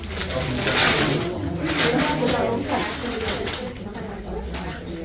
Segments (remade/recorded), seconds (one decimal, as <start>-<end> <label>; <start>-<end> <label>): 0.0-0.8 recorded; 0.8-1.7 remade; 1.7-3.0 recorded; 3.0-4.4 remade; 4.4-5.0 recorded